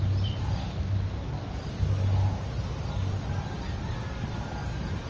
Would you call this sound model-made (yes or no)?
no